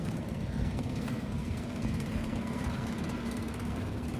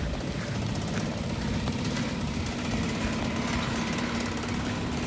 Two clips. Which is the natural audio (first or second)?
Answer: second